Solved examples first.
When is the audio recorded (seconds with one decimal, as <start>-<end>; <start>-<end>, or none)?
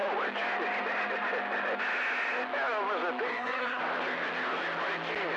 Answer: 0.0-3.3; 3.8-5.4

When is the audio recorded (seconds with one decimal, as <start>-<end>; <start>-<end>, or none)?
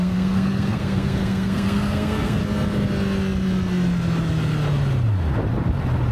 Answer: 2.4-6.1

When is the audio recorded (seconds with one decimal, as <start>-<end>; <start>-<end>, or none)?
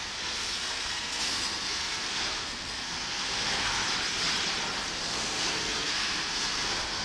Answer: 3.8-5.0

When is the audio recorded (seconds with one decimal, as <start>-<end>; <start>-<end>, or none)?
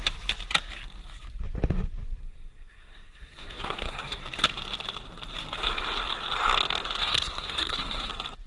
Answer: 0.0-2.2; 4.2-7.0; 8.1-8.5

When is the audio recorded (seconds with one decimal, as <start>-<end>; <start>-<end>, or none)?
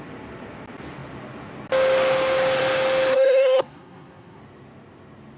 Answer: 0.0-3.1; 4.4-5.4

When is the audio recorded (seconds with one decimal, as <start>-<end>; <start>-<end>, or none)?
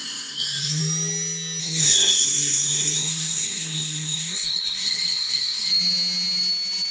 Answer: 0.8-1.6; 5.7-6.9